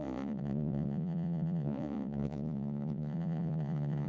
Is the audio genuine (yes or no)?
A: no